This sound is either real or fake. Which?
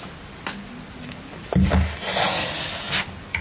real